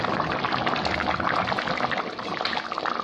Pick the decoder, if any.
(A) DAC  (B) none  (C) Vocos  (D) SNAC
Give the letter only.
B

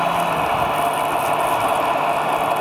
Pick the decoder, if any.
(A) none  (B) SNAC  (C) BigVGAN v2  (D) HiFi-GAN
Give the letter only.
A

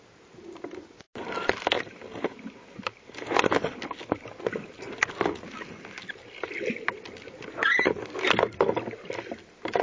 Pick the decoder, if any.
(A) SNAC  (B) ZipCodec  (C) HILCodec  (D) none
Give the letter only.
D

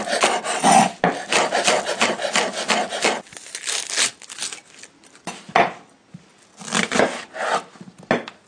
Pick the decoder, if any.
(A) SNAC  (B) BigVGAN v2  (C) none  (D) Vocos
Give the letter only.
C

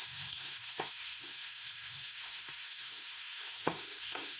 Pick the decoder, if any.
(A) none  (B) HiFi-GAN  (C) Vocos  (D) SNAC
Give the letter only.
D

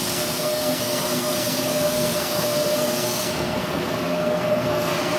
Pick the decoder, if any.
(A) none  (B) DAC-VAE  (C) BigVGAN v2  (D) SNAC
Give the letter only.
D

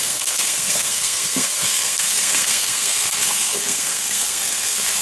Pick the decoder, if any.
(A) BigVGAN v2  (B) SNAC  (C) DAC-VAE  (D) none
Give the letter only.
B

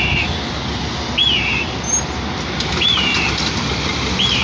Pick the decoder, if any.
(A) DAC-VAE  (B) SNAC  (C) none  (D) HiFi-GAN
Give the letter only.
C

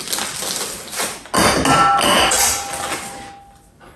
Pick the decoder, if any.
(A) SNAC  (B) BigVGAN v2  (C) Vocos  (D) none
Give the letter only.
D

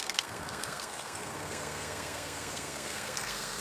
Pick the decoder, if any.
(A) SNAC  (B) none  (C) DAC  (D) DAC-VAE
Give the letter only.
A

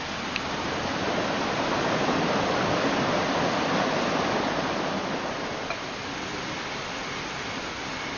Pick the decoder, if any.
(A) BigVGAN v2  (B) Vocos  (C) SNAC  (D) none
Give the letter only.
D